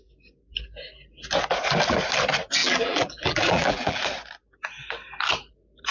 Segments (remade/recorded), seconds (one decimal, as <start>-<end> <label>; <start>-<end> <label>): 0.0-2.6 recorded; 2.6-4.0 remade; 4.0-5.9 recorded